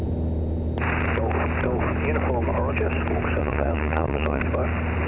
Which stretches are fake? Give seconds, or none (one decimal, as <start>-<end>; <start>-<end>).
3.4-4.4